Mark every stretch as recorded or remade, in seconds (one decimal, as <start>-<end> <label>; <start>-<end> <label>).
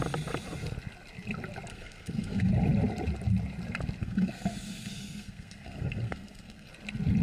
0.0-1.7 recorded; 1.7-2.5 remade; 2.5-4.0 recorded; 4.0-6.7 remade; 6.7-7.2 recorded